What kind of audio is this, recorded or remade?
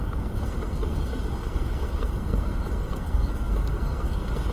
remade